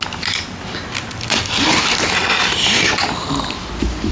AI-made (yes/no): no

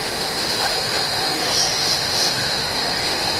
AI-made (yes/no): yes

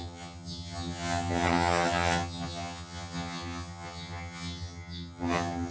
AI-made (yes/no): yes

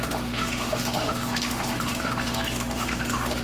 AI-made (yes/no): yes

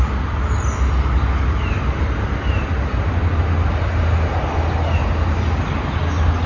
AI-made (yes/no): no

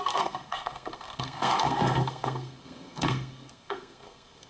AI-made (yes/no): yes